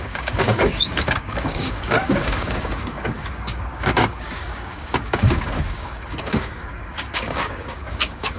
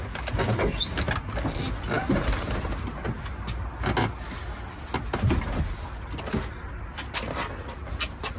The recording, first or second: second